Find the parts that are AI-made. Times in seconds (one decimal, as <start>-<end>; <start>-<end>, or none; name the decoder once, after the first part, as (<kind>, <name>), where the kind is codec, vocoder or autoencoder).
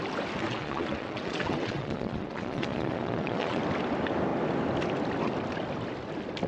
0.4-3.6 (vocoder, Vocos)